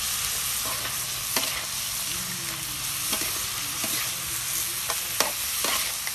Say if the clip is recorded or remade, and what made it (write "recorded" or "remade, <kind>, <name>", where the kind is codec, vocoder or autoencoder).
recorded